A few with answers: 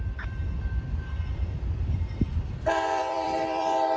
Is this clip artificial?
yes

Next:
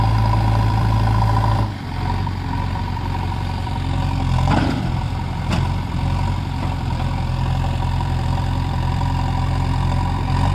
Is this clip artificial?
yes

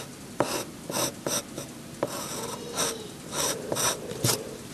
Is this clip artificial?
no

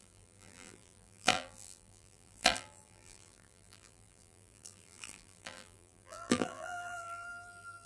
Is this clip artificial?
yes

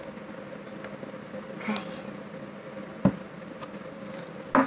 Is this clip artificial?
no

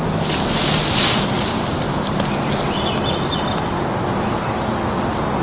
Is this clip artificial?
no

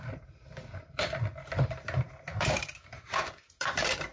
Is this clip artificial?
yes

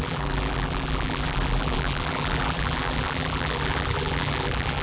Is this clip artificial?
yes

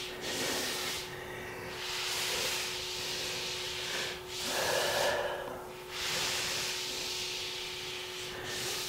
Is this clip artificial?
no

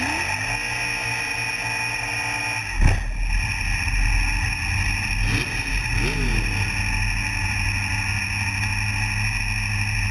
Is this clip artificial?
no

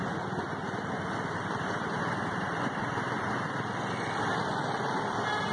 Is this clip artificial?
yes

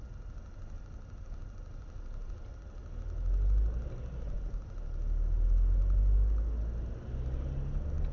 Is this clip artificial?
no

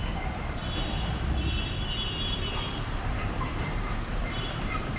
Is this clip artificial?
yes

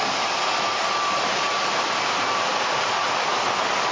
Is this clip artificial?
yes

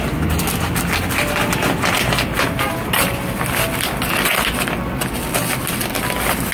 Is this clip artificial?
no